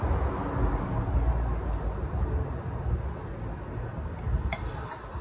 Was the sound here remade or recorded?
recorded